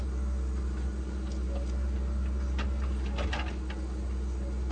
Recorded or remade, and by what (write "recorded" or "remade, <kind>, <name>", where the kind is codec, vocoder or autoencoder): recorded